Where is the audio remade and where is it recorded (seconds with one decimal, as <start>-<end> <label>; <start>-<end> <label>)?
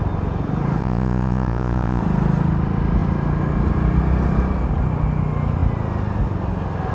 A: 0.0-0.8 recorded; 0.8-2.0 remade; 2.0-6.9 recorded